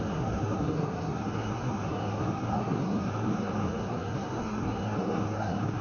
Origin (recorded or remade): remade